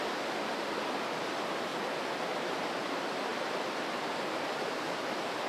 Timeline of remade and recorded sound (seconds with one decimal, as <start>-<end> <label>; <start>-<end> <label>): 0.0-5.5 recorded